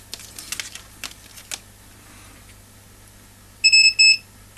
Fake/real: real